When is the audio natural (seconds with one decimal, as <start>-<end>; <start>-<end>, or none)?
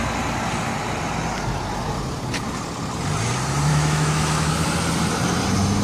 0.0-3.7; 4.5-5.8